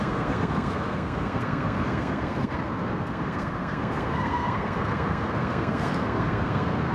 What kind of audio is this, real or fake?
fake